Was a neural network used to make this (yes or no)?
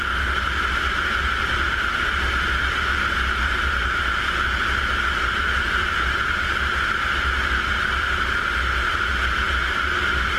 no